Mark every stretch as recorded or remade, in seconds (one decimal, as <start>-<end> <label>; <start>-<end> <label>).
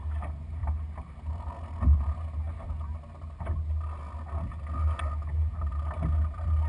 0.0-6.7 recorded